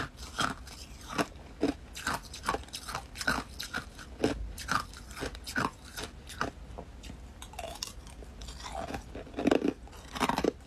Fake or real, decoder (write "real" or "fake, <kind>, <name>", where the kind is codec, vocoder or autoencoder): real